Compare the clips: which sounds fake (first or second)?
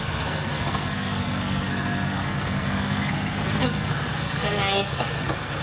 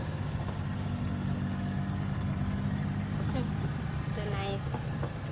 first